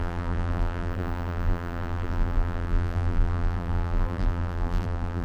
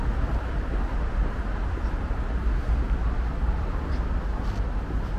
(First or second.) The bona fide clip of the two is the second